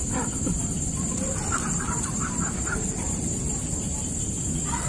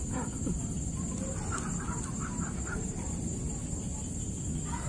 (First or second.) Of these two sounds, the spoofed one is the first